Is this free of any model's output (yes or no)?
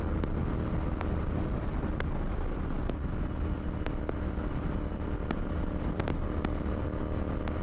yes